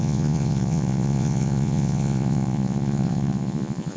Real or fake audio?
fake